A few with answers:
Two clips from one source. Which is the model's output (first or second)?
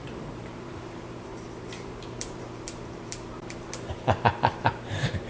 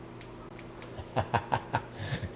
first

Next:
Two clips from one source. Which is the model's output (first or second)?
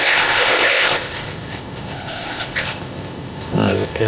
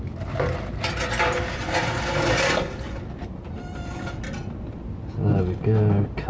first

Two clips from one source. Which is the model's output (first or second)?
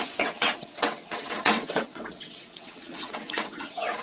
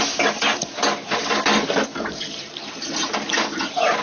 first